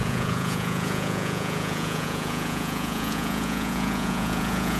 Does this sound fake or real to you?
fake